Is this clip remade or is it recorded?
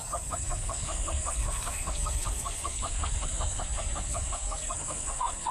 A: remade